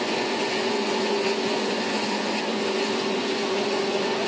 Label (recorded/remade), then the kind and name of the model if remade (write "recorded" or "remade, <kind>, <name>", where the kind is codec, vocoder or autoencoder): remade, vocoder, Vocos